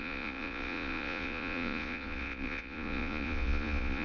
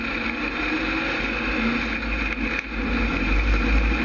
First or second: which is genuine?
second